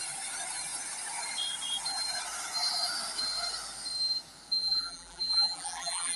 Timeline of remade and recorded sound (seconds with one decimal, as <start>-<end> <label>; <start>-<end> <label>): 0.0-4.6 recorded; 4.6-6.2 remade